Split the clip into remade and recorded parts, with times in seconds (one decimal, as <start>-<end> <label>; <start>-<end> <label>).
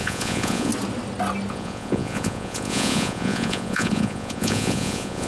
0.0-0.7 remade; 0.7-1.5 recorded; 1.5-5.3 remade